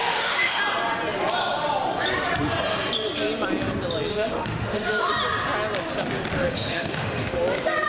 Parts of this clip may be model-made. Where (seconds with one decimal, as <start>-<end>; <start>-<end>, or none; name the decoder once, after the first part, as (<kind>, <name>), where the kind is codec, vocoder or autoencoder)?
0.0-0.6 (autoencoder, DAC-VAE); 4.1-5.1; 6.4-7.4